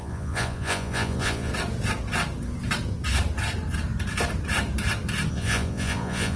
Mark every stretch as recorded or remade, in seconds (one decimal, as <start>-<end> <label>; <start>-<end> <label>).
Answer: 0.0-1.5 remade; 1.5-5.3 recorded; 5.3-6.4 remade